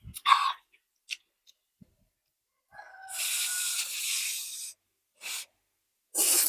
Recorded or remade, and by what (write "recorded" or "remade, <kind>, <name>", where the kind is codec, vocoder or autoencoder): recorded